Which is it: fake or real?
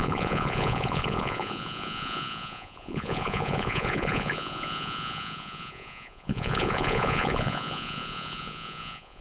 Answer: fake